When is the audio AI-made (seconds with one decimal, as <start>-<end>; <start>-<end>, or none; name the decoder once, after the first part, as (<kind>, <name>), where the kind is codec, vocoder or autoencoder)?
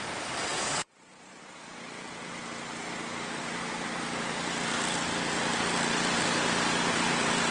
0.5-2.3 (vocoder, Vocos)